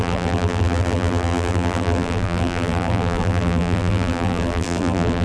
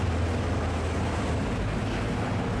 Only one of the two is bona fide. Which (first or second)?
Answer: second